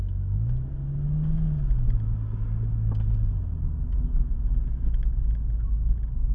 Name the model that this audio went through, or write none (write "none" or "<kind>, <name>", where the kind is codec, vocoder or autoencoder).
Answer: none